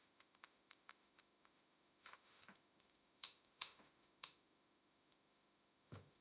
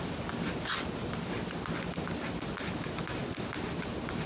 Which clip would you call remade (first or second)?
first